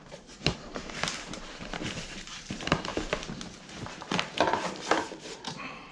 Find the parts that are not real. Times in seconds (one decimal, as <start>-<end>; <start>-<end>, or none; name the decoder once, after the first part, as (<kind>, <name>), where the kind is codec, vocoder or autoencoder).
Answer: 0.0-2.9 (vocoder, BigVGAN v2); 3.5-5.9